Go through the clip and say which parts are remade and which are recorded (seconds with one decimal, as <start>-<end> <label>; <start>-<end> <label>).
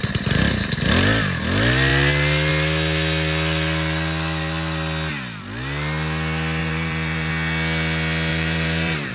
0.0-6.6 recorded; 6.6-7.3 remade; 7.3-8.3 recorded; 8.3-9.1 remade